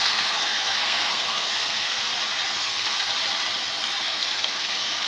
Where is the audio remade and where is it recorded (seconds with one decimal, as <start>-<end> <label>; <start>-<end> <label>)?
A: 0.0-2.1 remade; 2.1-2.6 recorded; 2.6-3.1 remade; 3.1-4.0 recorded; 4.0-5.1 remade